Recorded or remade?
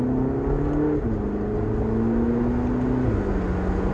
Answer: recorded